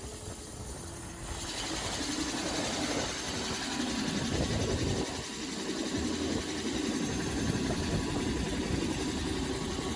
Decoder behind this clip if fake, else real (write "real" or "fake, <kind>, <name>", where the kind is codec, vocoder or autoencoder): real